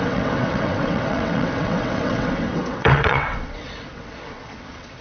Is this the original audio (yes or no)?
no